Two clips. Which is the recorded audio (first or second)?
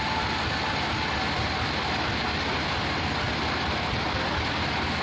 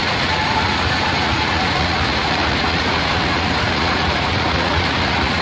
first